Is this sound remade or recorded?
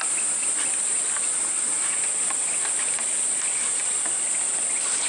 recorded